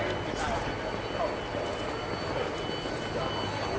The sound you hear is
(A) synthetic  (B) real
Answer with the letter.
B